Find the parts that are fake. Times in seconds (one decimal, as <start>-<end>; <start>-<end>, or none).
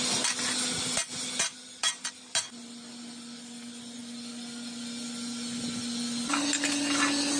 none